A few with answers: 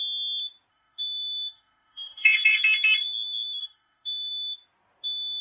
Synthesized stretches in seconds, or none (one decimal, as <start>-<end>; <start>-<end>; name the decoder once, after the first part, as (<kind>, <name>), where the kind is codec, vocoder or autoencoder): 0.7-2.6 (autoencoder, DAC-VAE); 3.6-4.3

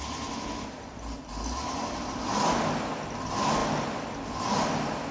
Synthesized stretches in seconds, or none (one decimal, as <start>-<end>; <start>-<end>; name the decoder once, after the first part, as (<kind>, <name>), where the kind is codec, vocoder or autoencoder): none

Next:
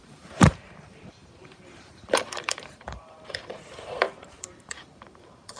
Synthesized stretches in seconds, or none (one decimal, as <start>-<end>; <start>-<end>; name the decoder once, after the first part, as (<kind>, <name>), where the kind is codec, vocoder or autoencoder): 0.0-5.6 (vocoder, BigVGAN v2)

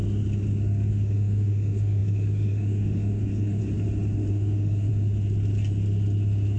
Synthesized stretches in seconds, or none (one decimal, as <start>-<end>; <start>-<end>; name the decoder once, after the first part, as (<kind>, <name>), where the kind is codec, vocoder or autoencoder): 0.9-3.6 (autoencoder, DAC-VAE); 4.3-4.9

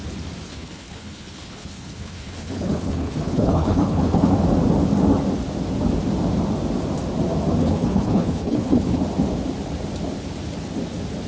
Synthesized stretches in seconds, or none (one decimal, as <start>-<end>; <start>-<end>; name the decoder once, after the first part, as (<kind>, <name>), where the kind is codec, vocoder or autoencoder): 0.5-4.3 (codec, HILCodec); 7.6-9.0

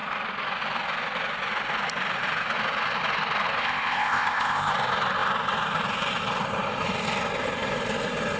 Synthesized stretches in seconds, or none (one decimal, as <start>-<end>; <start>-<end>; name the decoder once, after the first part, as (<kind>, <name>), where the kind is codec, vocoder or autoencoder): 3.6-4.7 (codec, ZipCodec)

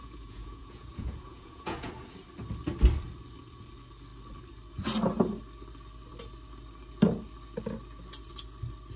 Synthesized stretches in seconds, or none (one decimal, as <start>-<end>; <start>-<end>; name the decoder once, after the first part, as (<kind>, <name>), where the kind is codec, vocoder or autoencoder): 0.0-1.9 (vocoder, Vocos)